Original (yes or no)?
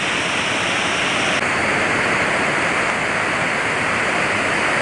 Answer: yes